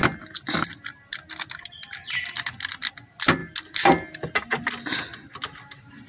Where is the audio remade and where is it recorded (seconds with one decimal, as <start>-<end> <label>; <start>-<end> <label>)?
0.0-6.1 recorded